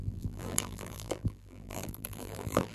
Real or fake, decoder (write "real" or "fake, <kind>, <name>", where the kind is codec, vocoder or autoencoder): fake, vocoder, BigVGAN v2